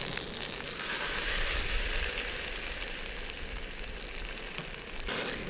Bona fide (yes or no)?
yes